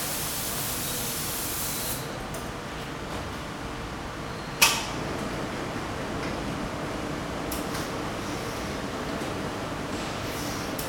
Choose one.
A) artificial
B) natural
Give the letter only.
B